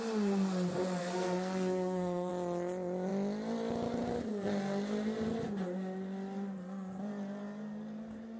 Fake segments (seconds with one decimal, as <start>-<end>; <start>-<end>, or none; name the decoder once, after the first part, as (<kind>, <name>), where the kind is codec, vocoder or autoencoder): 1.0-2.3 (codec, SNAC)